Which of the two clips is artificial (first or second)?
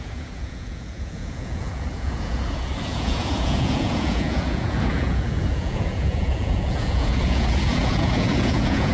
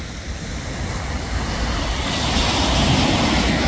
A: first